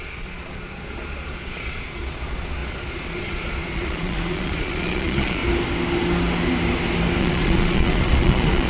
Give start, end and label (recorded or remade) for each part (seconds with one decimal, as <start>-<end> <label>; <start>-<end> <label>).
0.0-5.4 remade; 5.4-7.2 recorded; 7.2-8.7 remade